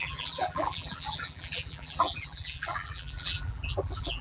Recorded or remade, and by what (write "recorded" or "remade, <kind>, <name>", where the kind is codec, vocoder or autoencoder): remade, vocoder, BigVGAN v2